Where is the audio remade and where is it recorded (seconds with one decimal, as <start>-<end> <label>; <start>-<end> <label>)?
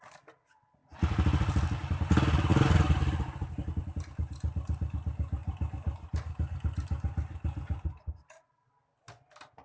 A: 0.0-9.6 recorded